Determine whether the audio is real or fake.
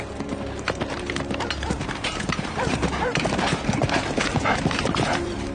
fake